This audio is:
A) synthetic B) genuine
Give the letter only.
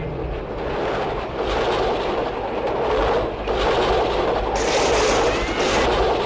B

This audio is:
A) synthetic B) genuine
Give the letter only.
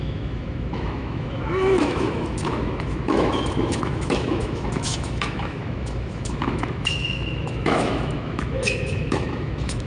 A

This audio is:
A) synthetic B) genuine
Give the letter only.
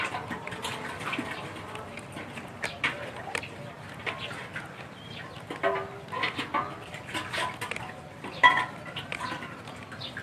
B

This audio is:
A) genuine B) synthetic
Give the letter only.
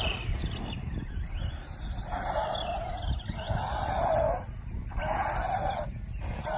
A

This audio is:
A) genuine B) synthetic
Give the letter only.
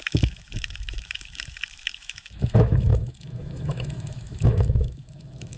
B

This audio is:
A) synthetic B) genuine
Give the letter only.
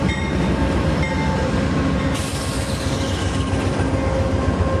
B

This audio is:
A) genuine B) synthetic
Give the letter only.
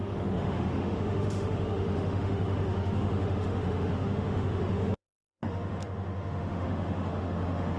B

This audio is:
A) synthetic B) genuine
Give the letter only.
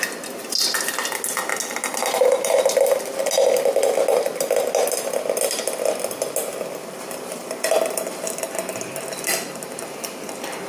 B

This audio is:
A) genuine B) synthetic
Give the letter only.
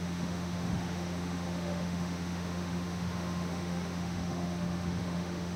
B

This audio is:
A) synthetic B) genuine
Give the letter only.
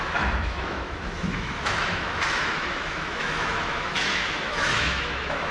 A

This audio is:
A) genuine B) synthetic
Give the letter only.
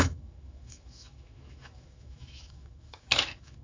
B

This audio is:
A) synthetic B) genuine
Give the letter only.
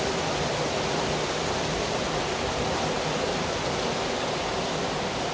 B